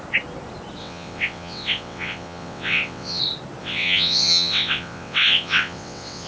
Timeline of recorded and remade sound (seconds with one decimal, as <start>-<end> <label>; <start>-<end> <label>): 0.0-0.8 recorded; 0.8-3.2 remade; 3.2-3.6 recorded; 3.6-6.3 remade